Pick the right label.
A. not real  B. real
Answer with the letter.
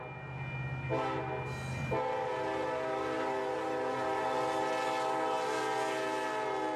B